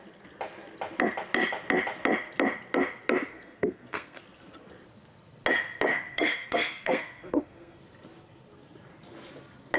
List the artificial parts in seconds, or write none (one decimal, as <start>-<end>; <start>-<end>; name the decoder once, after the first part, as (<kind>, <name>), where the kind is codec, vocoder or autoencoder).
3.3-4.2 (codec, SNAC); 5.9-7.8